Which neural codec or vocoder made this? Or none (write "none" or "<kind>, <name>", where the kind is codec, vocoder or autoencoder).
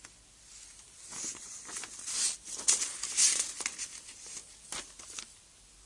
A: none